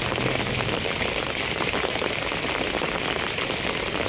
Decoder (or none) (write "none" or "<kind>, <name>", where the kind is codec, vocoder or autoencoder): none